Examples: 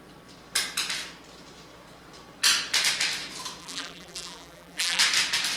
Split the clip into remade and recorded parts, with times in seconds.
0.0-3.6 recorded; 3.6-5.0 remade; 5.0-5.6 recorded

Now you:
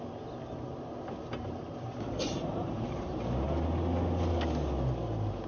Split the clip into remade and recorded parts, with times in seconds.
0.0-1.4 recorded; 1.4-3.2 remade; 3.2-5.5 recorded

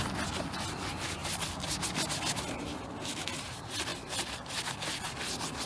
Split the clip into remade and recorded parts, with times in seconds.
0.0-3.9 recorded; 3.9-4.5 remade; 4.5-5.7 recorded

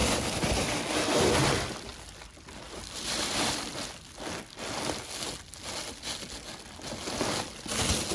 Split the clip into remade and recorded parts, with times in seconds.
0.0-0.7 remade; 0.7-1.9 recorded; 1.9-3.7 remade; 3.7-8.1 recorded

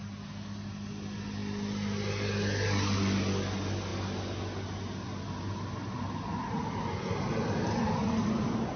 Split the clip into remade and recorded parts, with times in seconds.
0.0-8.8 recorded

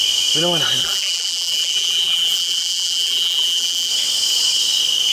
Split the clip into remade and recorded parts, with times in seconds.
0.0-0.8 recorded; 0.8-3.9 remade; 3.9-5.1 recorded